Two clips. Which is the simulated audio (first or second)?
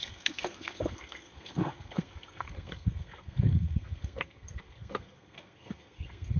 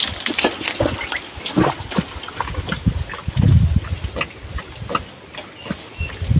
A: first